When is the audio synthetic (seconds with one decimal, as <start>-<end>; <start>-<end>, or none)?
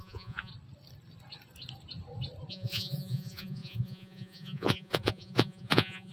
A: 0.0-0.5; 2.5-6.1